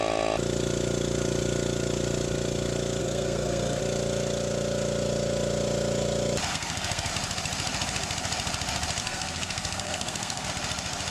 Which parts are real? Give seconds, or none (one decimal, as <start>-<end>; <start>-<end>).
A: 0.0-3.0; 3.8-6.5; 7.1-9.0; 10.5-11.1